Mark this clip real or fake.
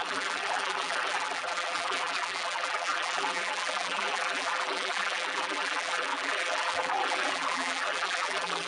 fake